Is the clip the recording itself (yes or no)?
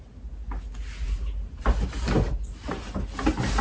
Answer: yes